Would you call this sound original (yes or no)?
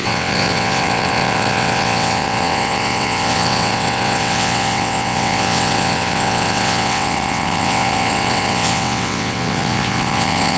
no